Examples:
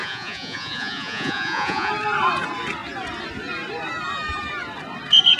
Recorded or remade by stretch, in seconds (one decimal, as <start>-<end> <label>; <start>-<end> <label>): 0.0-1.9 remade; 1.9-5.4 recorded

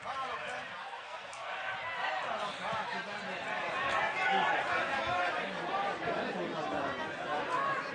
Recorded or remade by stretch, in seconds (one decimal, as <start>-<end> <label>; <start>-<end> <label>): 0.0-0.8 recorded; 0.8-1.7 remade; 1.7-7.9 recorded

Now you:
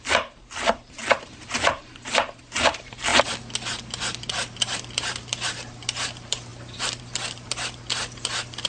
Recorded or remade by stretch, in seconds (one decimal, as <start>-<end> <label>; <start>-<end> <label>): 0.0-3.1 remade; 3.1-4.3 recorded; 4.3-6.5 remade; 6.5-7.0 recorded; 7.0-8.7 remade